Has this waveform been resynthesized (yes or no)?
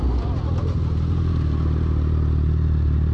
no